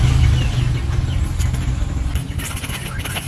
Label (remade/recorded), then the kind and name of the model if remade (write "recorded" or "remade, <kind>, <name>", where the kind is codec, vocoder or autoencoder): recorded